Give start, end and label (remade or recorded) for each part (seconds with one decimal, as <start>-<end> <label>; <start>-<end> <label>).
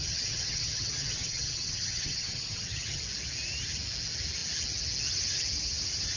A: 0.0-3.0 remade; 3.0-6.2 recorded